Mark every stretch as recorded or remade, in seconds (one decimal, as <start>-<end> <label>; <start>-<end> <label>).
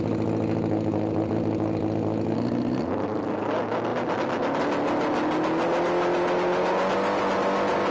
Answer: 0.0-7.9 recorded